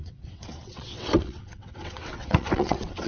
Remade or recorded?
remade